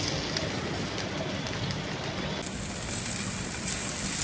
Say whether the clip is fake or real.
real